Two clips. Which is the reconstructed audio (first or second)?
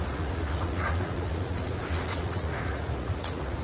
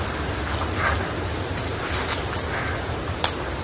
first